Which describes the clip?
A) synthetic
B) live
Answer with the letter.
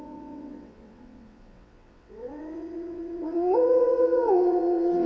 A